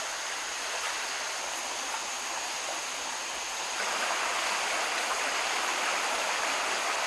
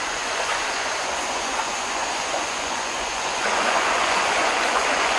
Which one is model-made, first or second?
second